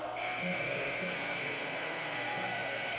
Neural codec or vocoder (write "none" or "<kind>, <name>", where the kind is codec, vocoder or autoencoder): codec, SNAC